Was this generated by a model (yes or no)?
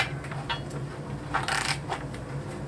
no